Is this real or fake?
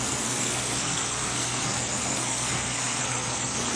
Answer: fake